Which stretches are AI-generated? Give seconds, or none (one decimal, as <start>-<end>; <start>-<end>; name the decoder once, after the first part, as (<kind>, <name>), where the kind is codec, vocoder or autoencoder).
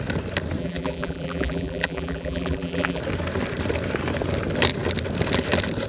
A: 0.6-3.0 (vocoder, BigVGAN v2)